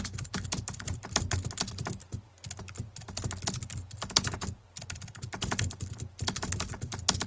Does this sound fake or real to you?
real